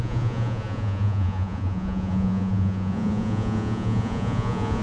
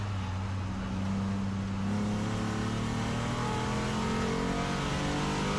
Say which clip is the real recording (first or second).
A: second